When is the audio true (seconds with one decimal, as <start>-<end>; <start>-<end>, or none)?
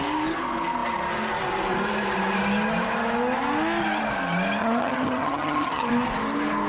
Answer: 0.0-4.6; 5.9-6.7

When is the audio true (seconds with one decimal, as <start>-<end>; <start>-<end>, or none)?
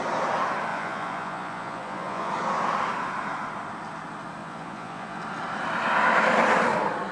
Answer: 0.0-0.7; 2.3-4.4; 5.2-7.1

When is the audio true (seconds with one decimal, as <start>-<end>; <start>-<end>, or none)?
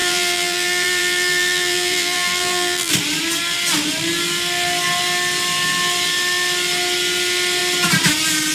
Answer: 2.9-8.5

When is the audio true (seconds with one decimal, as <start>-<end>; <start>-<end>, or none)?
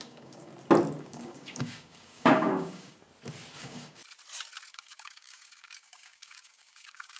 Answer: 0.5-1.0; 3.0-3.6; 4.0-4.7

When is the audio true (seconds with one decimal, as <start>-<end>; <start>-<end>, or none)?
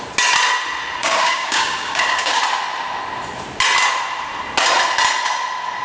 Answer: 0.0-1.0; 2.4-5.8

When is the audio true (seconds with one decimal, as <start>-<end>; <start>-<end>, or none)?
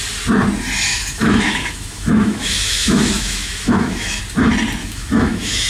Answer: 0.0-0.9; 4.2-4.8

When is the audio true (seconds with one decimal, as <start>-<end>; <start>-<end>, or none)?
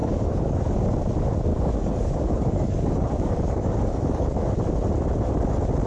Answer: 0.8-1.5; 4.4-5.9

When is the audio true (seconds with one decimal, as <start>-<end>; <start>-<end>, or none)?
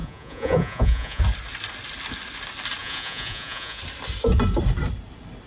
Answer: 1.2-2.8; 3.8-5.5